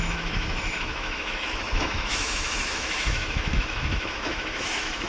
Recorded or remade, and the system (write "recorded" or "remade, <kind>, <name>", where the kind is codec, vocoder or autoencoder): remade, autoencoder, DAC-VAE